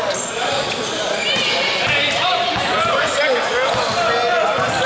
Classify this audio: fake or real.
real